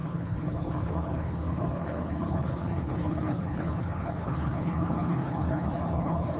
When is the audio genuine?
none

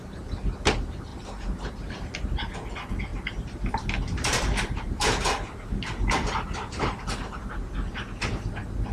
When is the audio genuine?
0.0-1.1; 2.0-3.1; 7.5-8.9

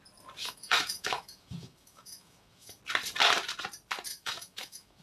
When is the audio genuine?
0.0-0.4; 2.8-4.1

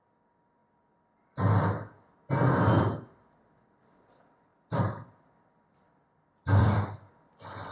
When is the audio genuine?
0.0-6.4; 7.1-7.7

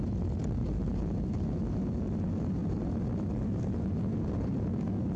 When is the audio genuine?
0.0-5.2

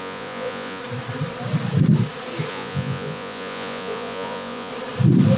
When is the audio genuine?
0.8-2.5; 4.7-5.4

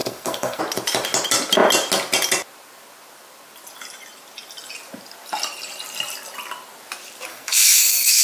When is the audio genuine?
0.6-7.3

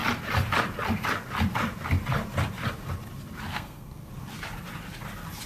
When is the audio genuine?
0.0-3.5; 4.1-5.5